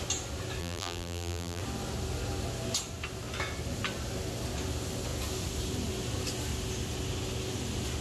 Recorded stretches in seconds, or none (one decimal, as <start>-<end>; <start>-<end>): 0.0-0.6; 1.6-8.0